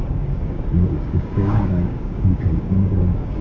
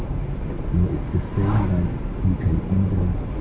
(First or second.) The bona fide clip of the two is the second